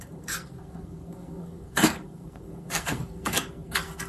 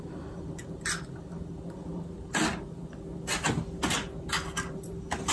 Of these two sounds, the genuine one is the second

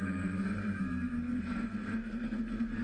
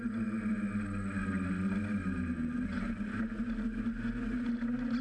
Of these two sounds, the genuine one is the second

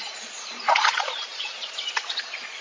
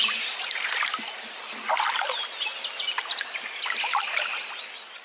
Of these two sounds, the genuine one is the second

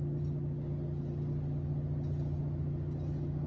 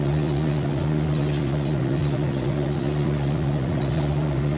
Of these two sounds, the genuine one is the first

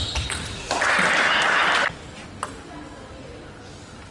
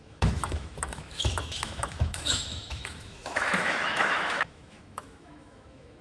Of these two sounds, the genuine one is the first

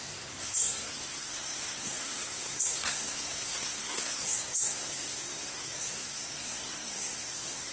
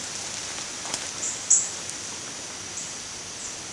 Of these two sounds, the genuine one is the second